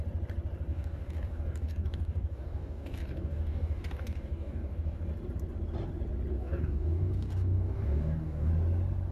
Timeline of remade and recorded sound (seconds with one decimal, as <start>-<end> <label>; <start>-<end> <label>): 0.0-0.7 recorded; 0.7-5.0 remade; 5.0-6.3 recorded; 6.3-8.5 remade; 8.5-9.1 recorded